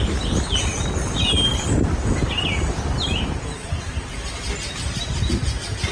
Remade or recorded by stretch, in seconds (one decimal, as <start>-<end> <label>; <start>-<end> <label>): 0.0-5.9 recorded

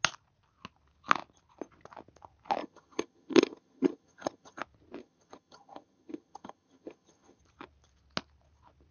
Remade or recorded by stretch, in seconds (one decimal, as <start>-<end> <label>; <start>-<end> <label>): 0.0-2.6 recorded; 2.6-4.6 remade; 4.6-5.0 recorded; 5.0-7.4 remade; 7.4-8.9 recorded

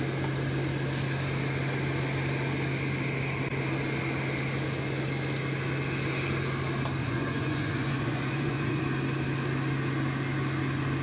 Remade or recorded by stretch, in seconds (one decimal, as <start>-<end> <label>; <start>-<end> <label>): 0.0-7.0 recorded; 7.0-8.8 remade; 8.8-11.0 recorded